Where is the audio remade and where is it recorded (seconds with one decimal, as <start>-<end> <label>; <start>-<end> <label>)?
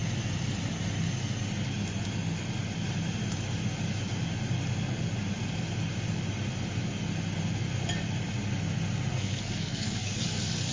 0.0-9.1 recorded; 9.1-10.2 remade; 10.2-10.7 recorded